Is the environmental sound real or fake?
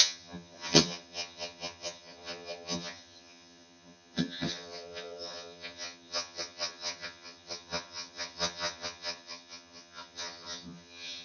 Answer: fake